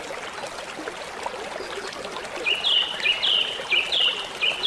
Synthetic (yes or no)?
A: no